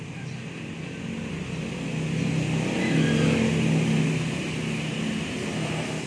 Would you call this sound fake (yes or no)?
no